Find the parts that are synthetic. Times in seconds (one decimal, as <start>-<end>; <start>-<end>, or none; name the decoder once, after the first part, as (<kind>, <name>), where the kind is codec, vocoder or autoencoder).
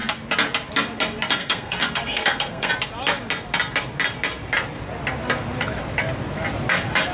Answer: 1.4-2.7 (codec, SNAC)